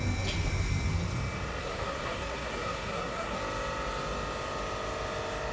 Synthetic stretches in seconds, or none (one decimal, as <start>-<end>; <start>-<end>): 1.6-3.4